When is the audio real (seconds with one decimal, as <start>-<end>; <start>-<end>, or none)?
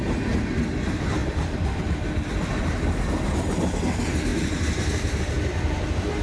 0.0-6.2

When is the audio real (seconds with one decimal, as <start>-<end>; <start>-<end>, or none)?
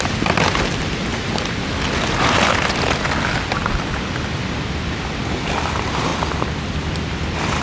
0.0-1.1; 1.7-7.6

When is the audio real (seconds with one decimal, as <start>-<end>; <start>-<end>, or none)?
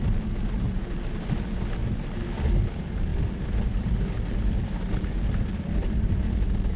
0.0-3.1; 6.2-6.8